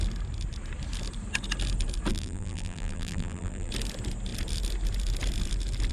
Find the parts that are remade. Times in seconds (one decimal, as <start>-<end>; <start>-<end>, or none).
2.1-3.7